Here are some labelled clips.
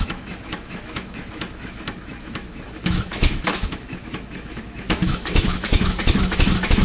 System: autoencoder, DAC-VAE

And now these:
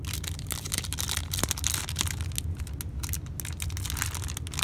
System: none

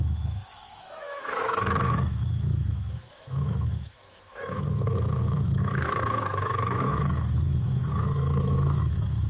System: autoencoder, DAC-VAE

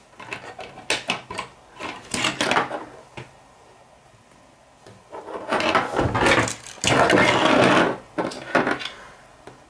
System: none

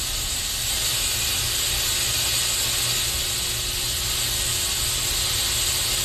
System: none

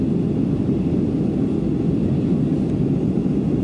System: none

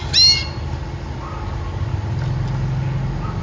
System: none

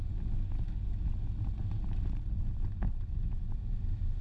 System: none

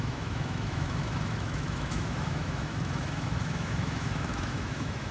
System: autoencoder, DAC-VAE